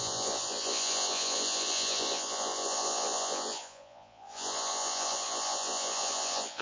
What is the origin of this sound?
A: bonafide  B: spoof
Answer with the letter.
B